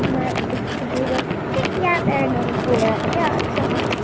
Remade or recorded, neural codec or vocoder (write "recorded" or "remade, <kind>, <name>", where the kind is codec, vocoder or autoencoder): recorded